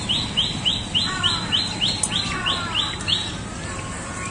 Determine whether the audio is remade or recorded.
recorded